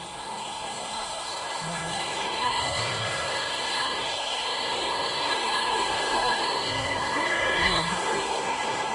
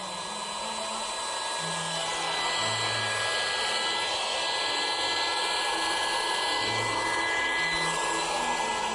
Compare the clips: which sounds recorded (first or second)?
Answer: second